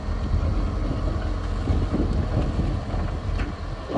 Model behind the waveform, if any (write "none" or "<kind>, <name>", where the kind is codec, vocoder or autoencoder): none